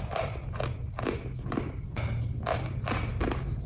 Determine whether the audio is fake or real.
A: real